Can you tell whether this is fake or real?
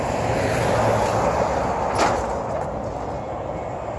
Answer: real